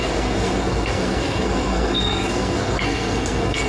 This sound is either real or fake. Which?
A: fake